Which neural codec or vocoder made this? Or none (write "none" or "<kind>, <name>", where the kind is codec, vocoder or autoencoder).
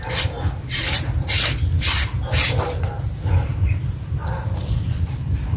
none